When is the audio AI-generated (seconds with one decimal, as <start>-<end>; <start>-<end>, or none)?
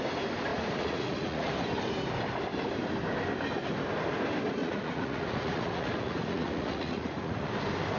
0.5-1.5; 4.6-7.5